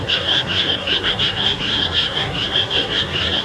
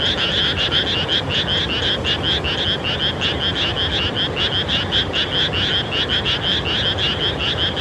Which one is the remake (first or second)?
first